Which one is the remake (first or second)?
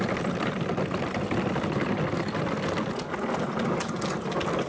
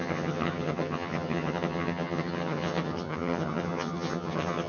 second